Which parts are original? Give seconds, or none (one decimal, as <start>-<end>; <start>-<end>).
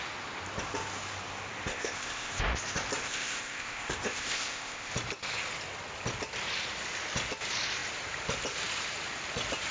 0.0-1.7; 2.3-3.0; 4.9-9.7